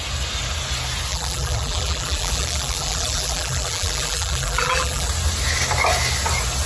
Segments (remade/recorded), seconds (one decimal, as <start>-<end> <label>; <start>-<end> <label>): 0.0-1.1 recorded; 1.1-5.1 remade; 5.1-6.7 recorded